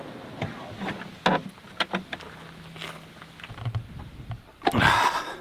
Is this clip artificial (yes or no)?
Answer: no